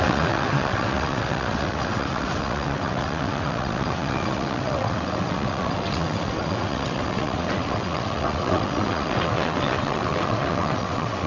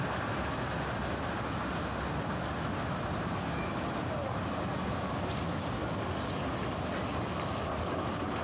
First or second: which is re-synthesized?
first